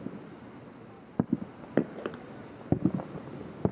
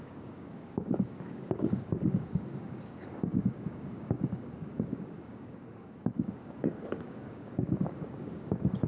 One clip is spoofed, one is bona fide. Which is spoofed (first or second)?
second